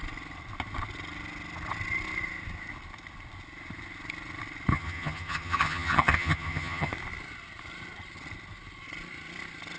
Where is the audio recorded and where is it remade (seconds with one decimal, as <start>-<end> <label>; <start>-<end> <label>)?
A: 0.0-4.7 recorded; 4.7-6.9 remade; 6.9-9.8 recorded